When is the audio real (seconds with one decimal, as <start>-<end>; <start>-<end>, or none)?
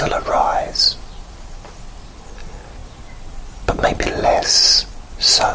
0.0-0.5; 1.7-5.5